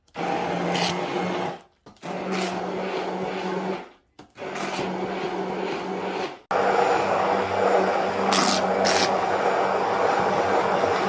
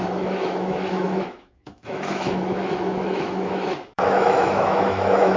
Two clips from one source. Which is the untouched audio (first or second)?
first